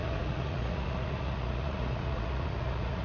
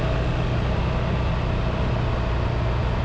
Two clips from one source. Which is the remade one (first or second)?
first